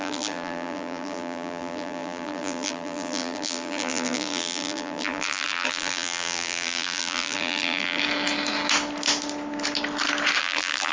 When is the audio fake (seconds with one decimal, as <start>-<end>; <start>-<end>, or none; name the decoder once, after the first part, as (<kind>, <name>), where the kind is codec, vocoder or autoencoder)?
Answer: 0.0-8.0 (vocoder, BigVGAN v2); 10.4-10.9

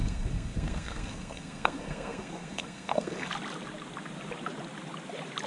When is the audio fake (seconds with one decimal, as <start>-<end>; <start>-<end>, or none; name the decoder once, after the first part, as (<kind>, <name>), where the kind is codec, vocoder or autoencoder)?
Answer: 0.0-3.3 (codec, SNAC)

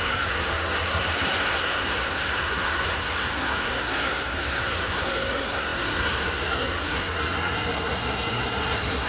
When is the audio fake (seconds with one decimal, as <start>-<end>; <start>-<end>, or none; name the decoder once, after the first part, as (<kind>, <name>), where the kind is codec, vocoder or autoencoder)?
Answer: 0.0-9.1 (codec, SNAC)

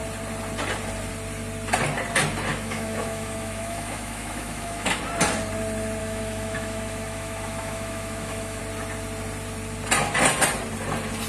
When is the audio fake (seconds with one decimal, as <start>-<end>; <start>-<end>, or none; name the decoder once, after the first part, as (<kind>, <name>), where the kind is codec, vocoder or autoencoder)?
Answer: 2.5-5.0 (autoencoder, DAC-VAE); 6.0-8.6

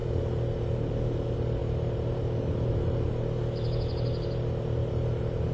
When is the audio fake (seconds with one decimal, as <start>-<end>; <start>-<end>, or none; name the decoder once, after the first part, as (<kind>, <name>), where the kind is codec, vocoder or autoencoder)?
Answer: none

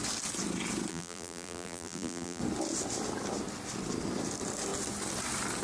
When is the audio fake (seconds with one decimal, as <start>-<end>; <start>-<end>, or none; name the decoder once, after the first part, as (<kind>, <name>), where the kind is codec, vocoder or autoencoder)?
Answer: 0.9-2.4 (vocoder, BigVGAN v2)

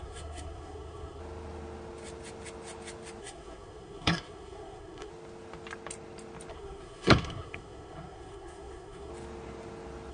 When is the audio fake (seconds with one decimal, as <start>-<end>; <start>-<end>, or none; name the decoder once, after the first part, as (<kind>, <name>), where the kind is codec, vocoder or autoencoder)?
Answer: 0.0-1.2 (codec, SNAC); 3.2-5.1; 6.5-9.1